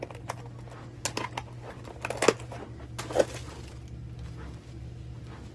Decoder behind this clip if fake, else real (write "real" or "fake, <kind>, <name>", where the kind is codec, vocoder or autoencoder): real